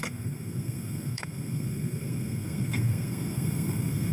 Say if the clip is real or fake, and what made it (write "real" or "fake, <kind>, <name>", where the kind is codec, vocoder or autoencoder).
fake, codec, SNAC